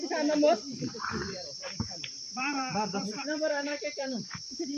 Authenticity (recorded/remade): remade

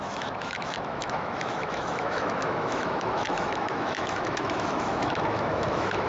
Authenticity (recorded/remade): remade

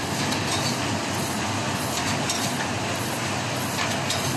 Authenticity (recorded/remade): recorded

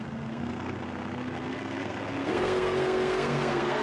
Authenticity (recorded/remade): remade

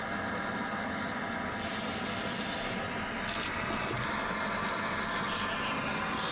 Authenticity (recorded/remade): recorded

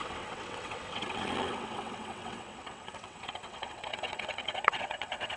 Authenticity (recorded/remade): remade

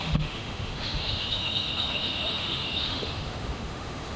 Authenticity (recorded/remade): remade